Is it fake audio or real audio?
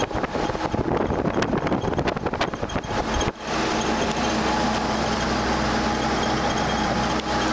real